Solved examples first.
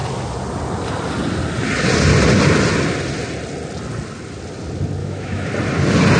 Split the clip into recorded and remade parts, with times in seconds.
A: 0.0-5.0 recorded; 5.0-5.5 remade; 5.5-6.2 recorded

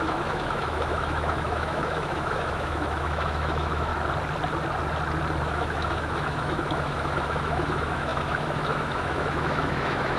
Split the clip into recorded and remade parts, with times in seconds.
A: 0.0-3.9 remade; 3.9-5.4 recorded; 5.4-10.2 remade